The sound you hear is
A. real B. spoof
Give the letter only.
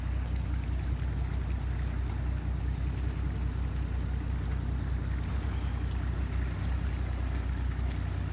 A